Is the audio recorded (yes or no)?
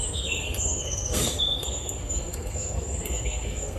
no